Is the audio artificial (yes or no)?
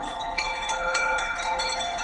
yes